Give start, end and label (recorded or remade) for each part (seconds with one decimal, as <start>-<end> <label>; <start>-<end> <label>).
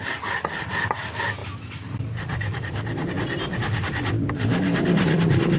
0.0-5.6 recorded